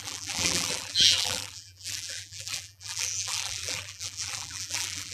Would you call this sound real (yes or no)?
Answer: no